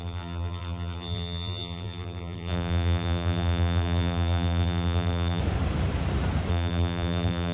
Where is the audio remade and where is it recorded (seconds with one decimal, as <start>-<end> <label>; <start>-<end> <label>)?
0.0-5.4 remade; 5.4-6.5 recorded; 6.5-7.5 remade